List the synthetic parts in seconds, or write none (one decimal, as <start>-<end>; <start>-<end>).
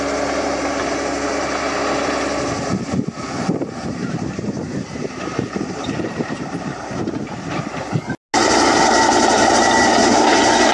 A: 4.0-7.0